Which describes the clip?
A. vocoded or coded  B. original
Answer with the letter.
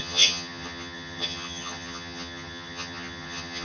A